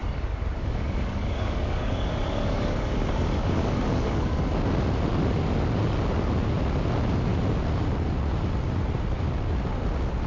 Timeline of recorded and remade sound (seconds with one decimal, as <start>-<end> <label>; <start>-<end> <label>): 0.0-4.5 remade; 4.5-10.3 recorded